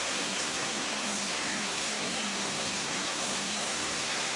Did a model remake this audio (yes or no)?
yes